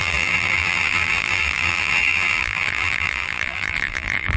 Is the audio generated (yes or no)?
yes